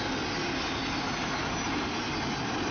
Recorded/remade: recorded